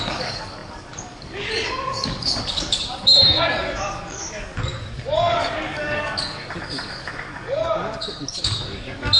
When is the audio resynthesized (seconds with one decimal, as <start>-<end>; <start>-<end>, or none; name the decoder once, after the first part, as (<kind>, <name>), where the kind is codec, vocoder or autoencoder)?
0.0-9.2 (codec, DAC)